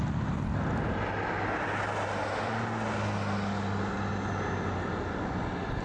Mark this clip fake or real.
real